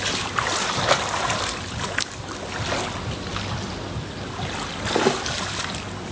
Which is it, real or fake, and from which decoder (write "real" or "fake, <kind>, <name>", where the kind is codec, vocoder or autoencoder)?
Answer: real